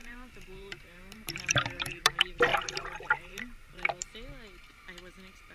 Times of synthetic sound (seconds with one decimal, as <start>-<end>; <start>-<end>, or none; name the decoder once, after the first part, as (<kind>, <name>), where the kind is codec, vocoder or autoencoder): 0.0-1.9 (vocoder, BigVGAN v2); 2.5-4.0